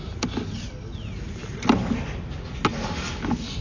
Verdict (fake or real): real